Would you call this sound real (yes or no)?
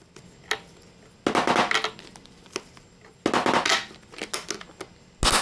yes